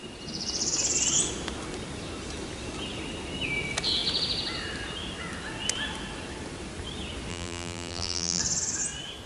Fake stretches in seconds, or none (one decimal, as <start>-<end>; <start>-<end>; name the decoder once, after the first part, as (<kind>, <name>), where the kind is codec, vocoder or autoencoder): 7.3-8.4 (vocoder, BigVGAN v2)